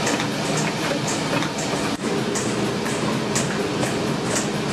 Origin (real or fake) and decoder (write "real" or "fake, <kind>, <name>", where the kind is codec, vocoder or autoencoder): real